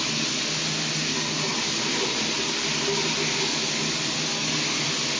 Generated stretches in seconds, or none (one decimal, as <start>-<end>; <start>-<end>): none